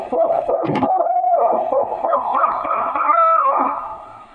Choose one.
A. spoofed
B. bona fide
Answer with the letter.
A